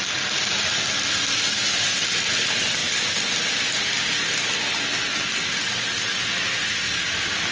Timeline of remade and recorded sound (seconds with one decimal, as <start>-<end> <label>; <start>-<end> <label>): 0.0-7.5 recorded